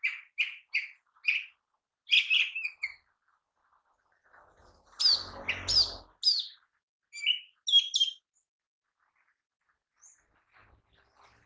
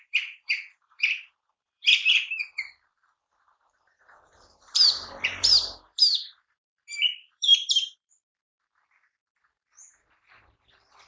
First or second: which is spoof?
second